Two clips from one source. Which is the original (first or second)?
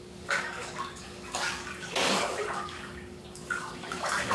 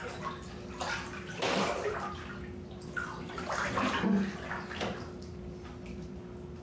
second